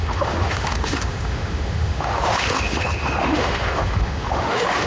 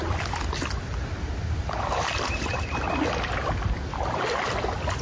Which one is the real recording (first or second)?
second